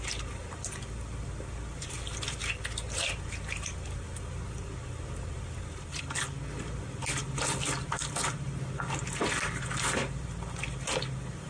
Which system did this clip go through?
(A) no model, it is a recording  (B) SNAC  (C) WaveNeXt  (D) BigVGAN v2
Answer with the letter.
A